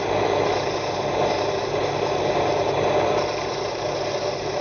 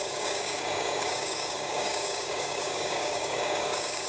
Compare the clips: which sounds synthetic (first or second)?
second